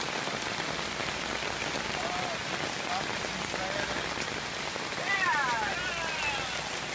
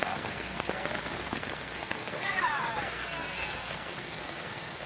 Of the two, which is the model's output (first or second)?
second